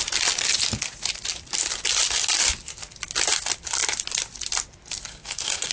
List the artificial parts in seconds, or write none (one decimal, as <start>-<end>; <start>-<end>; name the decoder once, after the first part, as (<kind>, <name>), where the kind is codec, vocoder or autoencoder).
5.1-5.7 (codec, SNAC)